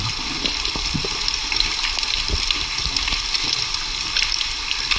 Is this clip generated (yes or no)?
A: yes